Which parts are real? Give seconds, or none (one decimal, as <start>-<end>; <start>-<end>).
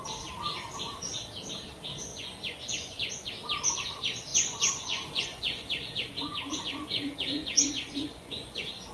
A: 0.0-2.1; 3.3-4.3